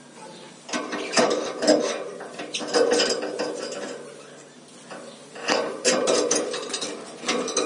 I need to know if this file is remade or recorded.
recorded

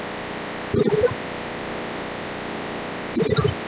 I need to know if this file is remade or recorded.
remade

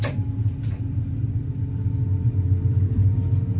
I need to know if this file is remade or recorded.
recorded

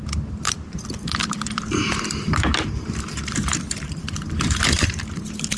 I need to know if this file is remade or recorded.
remade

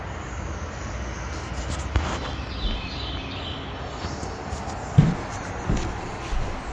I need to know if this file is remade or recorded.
recorded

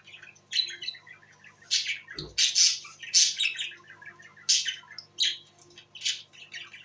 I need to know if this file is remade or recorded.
recorded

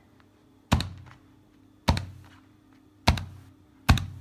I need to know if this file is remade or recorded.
recorded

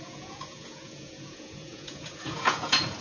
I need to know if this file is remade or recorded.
remade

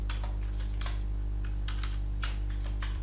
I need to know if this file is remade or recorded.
remade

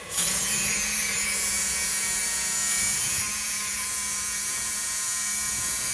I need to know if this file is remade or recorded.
remade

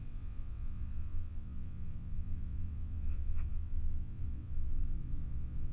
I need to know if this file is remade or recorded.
remade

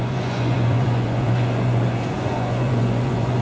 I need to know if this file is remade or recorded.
remade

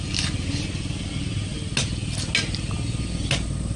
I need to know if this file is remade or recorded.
recorded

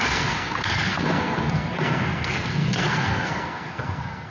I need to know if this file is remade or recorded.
remade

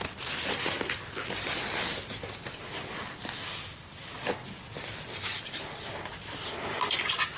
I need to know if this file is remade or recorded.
recorded